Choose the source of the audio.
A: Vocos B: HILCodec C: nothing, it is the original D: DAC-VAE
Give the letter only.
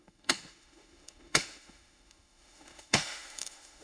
D